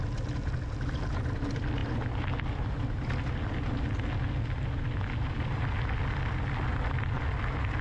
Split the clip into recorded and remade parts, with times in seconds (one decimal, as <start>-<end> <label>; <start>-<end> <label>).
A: 0.0-7.8 recorded